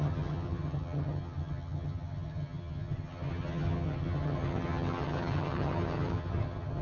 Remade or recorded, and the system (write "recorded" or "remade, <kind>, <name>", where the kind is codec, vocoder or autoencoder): remade, vocoder, HiFi-GAN